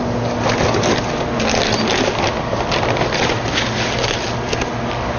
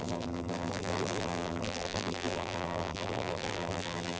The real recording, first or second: first